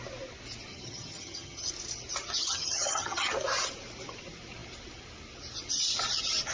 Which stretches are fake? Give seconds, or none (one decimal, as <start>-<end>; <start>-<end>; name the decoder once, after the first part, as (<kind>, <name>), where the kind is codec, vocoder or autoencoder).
0.7-1.7 (vocoder, HiFi-GAN); 2.4-3.3